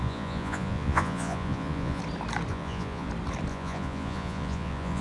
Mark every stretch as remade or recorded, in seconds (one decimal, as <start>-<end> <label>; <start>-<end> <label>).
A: 0.0-2.0 remade; 2.0-2.5 recorded; 2.5-3.1 remade; 3.1-3.5 recorded; 3.5-5.0 remade